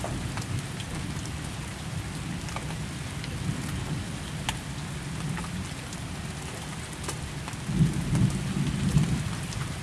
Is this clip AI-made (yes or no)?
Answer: no